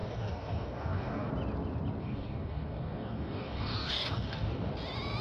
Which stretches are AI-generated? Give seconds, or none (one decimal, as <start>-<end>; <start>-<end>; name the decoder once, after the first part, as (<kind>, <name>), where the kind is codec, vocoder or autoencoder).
0.0-1.3 (codec, DAC); 2.0-4.7